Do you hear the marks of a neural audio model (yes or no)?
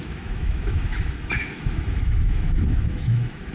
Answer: yes